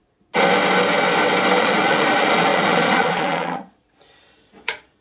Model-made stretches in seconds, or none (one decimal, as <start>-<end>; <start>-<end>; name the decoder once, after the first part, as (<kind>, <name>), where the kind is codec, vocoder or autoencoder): 1.6-5.0 (vocoder, Vocos)